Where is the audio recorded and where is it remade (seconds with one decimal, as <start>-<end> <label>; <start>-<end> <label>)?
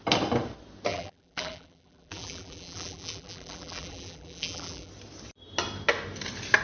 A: 0.0-0.9 recorded; 0.9-4.9 remade; 4.9-6.6 recorded